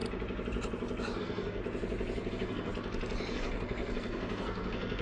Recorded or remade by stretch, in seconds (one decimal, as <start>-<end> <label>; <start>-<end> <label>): 0.0-1.2 recorded; 1.2-1.6 remade; 1.6-2.3 recorded; 2.3-2.7 remade; 2.7-3.3 recorded; 3.3-5.0 remade